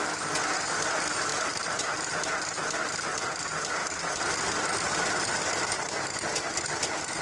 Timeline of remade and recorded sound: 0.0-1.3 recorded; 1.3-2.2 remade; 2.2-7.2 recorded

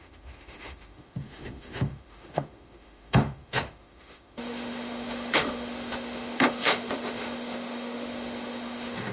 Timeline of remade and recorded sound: 0.0-9.1 remade